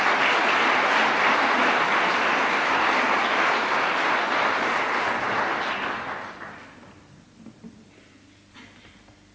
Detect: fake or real real